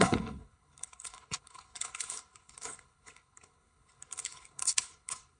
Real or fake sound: fake